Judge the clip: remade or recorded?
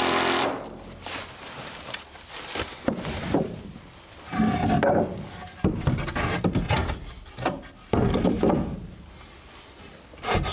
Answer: recorded